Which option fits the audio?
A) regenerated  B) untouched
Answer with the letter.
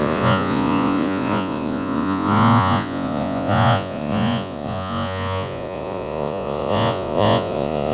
A